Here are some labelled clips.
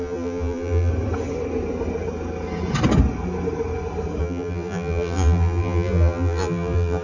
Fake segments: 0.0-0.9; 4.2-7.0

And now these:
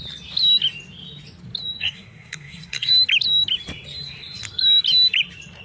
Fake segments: 1.8-2.9

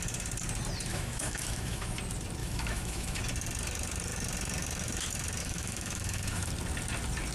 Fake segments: 0.9-2.0; 2.4-3.2; 5.4-6.5

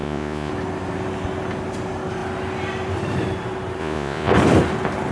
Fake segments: 0.0-0.5; 3.8-4.3